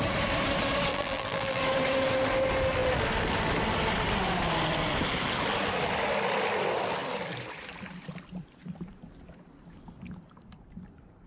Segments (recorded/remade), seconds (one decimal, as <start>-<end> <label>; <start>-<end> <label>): 0.0-0.9 recorded; 0.9-1.6 remade; 1.6-11.3 recorded